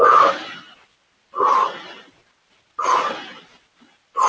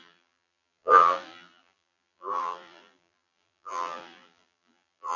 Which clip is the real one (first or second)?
first